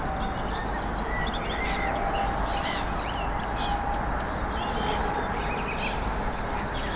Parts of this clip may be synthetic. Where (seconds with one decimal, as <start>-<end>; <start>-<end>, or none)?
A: none